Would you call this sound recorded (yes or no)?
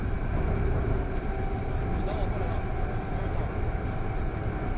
yes